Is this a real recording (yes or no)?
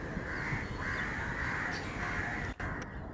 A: yes